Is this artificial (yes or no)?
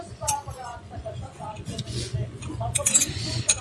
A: yes